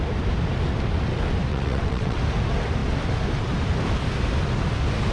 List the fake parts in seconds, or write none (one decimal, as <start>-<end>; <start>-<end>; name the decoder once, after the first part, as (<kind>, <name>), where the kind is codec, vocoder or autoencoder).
1.5-2.2 (vocoder, WaveNeXt)